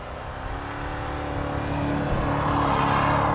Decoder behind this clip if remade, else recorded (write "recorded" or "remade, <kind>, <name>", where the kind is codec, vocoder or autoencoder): recorded